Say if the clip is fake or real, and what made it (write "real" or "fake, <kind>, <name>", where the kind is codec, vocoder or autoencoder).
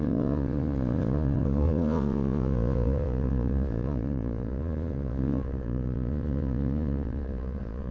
fake, vocoder, Vocos